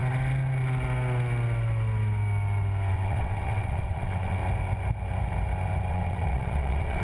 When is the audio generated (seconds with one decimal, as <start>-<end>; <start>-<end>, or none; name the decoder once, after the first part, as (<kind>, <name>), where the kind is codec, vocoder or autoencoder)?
2.9-4.4 (vocoder, WaveNeXt); 5.9-7.0